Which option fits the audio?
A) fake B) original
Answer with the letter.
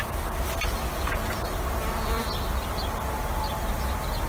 B